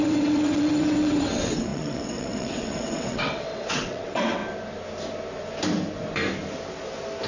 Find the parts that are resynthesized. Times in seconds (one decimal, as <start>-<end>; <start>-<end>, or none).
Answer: 0.0-4.4